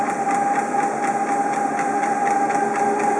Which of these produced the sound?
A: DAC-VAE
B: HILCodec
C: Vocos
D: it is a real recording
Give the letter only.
D